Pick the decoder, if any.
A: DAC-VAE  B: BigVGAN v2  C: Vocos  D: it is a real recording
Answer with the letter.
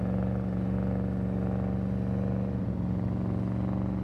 D